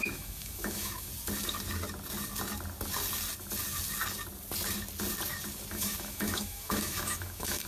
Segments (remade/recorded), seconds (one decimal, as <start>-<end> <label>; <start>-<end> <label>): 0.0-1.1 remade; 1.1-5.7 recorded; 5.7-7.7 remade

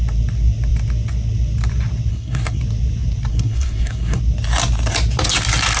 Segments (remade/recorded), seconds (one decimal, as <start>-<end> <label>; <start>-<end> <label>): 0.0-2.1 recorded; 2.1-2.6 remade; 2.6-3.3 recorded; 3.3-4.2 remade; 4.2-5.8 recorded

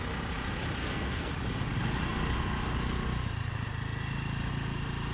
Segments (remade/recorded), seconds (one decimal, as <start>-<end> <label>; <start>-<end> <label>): 0.0-0.8 recorded; 0.8-1.3 remade; 1.3-5.1 recorded